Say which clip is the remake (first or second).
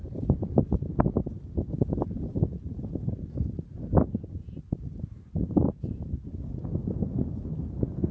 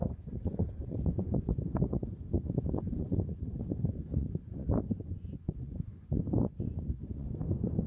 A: second